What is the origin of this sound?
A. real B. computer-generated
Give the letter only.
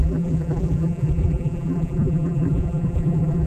B